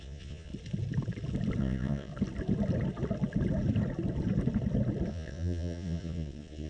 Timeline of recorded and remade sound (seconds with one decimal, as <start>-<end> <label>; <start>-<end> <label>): 0.0-0.5 remade; 0.5-1.6 recorded; 1.6-2.1 remade; 2.1-5.1 recorded; 5.1-6.7 remade